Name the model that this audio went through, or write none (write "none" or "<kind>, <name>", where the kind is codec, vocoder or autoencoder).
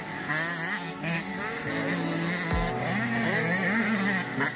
none